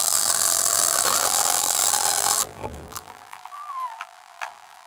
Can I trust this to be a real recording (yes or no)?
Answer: no